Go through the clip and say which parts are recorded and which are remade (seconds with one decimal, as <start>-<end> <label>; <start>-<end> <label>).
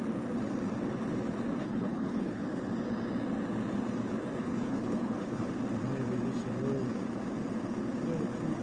0.0-1.6 recorded; 1.6-2.4 remade; 2.4-4.4 recorded; 4.4-5.5 remade; 5.5-8.6 recorded